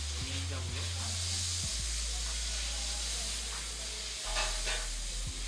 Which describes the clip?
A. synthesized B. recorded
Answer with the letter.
B